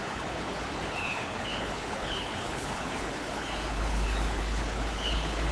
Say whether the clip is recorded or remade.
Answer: remade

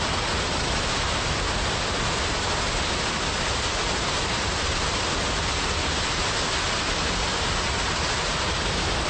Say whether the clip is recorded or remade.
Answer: recorded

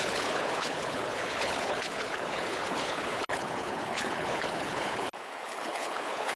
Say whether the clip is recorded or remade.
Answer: remade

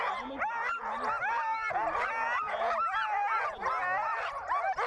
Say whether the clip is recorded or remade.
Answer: recorded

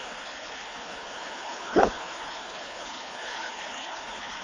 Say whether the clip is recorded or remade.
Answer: remade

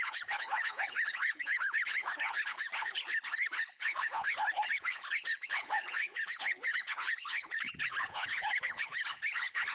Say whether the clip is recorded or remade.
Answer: remade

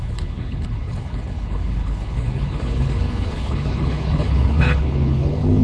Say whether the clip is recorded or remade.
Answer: remade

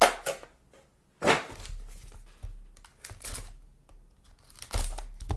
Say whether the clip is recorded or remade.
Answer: recorded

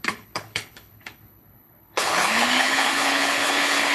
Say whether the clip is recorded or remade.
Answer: remade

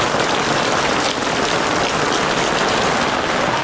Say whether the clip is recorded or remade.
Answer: recorded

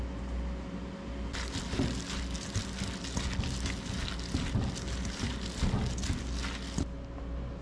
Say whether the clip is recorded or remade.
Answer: recorded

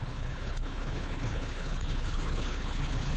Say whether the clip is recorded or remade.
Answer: remade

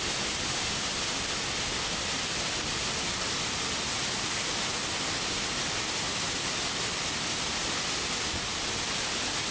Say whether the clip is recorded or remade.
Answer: recorded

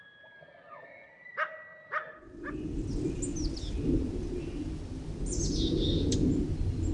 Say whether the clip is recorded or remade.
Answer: recorded